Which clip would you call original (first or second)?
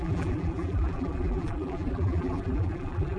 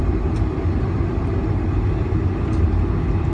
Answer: second